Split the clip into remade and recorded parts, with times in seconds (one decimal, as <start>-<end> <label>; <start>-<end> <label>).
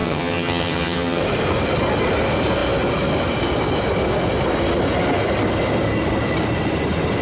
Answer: 0.0-1.2 remade; 1.2-7.2 recorded